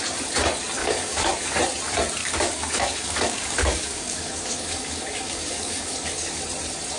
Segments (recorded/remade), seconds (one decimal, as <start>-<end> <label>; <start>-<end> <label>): 0.0-0.8 recorded; 0.8-1.6 remade; 1.6-2.2 recorded; 2.2-6.4 remade; 6.4-7.0 recorded